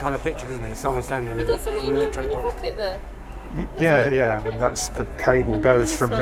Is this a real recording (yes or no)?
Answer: no